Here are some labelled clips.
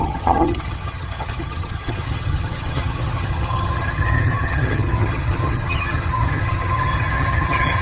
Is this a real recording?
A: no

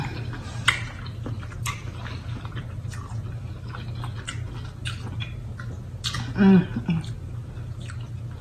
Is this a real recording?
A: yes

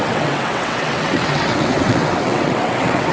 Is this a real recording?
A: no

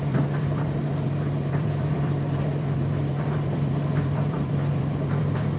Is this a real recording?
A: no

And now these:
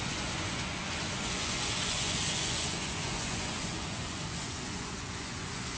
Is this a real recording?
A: no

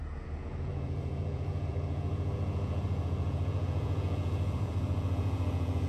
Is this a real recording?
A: no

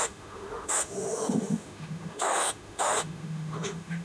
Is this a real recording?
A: no